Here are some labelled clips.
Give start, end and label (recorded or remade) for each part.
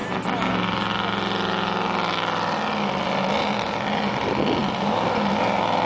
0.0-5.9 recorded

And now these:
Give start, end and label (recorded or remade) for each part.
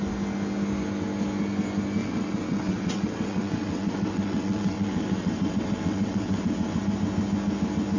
0.0-2.0 recorded; 2.0-6.8 remade; 6.8-8.0 recorded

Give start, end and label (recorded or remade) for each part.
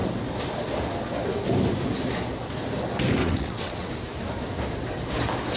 0.0-3.2 recorded; 3.2-3.9 remade; 3.9-5.6 recorded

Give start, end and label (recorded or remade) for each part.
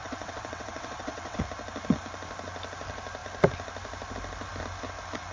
0.0-1.4 remade; 1.4-5.3 recorded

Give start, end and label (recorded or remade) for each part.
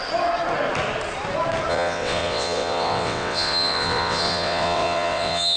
0.0-1.7 recorded; 1.7-5.6 remade